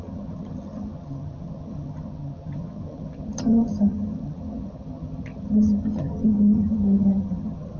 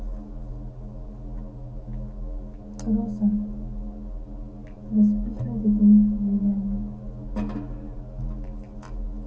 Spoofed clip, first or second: first